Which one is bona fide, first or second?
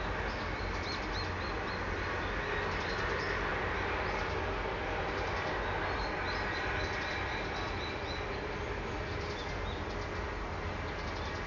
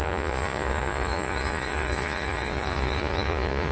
first